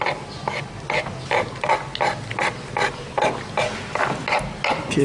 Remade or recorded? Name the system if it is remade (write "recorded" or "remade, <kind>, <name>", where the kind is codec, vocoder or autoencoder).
recorded